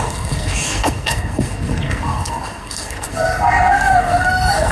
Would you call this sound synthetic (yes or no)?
yes